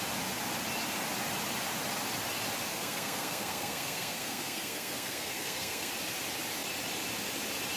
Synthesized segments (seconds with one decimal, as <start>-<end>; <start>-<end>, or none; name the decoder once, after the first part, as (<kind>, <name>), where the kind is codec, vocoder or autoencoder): 2.7-5.9 (codec, SNAC)